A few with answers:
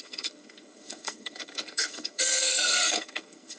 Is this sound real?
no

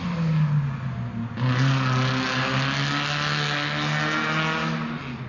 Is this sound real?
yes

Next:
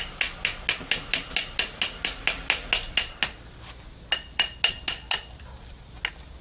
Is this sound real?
yes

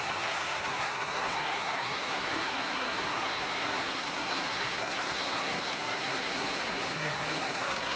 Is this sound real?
no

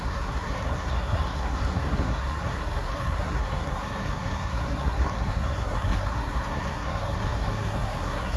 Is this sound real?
no